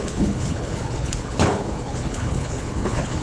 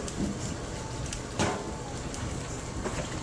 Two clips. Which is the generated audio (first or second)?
first